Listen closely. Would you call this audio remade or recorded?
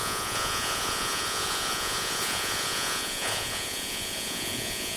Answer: remade